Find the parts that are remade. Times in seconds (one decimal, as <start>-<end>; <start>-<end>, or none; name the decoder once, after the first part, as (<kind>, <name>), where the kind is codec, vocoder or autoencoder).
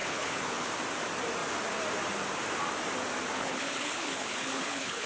0.0-0.7 (codec, HILCodec); 3.4-5.1